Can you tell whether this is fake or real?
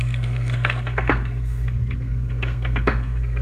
fake